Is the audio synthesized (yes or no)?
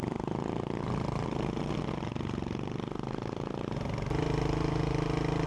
no